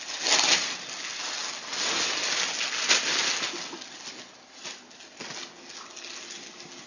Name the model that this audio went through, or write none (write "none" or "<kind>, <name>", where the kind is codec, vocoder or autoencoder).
none